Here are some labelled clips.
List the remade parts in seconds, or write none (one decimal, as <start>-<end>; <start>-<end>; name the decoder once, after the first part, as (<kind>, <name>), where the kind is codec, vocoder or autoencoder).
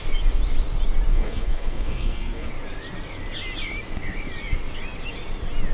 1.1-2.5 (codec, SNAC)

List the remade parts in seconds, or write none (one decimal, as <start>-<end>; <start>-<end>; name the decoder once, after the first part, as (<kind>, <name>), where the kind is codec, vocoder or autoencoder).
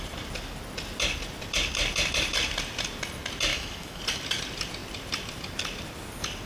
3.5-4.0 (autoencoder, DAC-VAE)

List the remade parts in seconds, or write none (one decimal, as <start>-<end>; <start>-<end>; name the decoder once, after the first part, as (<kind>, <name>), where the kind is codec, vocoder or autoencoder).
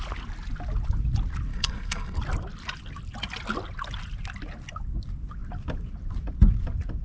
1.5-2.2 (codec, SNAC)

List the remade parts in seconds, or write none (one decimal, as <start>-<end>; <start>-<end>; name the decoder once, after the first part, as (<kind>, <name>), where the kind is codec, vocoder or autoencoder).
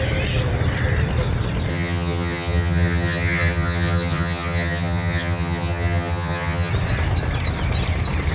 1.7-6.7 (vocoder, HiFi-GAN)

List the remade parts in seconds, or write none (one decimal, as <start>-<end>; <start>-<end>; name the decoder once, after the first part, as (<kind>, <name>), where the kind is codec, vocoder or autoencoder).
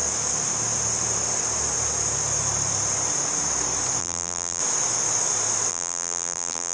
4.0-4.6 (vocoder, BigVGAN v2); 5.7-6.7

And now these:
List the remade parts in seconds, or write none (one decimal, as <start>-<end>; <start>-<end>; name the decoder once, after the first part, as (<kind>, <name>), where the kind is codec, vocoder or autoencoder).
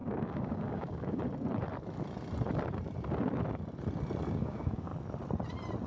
0.0-1.2 (codec, DAC); 4.3-4.9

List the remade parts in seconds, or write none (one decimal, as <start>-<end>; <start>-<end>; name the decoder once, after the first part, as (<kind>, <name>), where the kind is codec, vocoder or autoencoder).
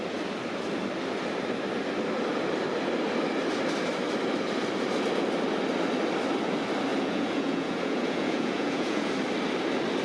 6.9-9.1 (vocoder, Vocos)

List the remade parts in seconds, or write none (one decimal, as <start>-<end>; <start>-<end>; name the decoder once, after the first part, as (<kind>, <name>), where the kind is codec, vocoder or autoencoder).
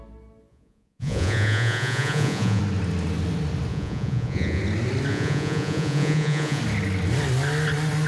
0.5-2.6 (vocoder, Vocos); 3.7-4.6; 5.1-6.6